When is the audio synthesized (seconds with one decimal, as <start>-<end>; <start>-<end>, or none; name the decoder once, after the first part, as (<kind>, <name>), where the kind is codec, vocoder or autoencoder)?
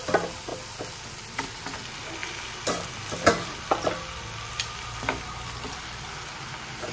none